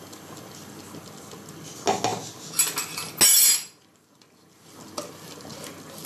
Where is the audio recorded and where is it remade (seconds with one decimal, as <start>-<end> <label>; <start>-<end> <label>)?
0.0-6.1 recorded